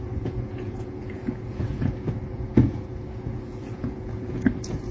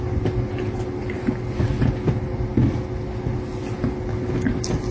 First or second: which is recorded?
second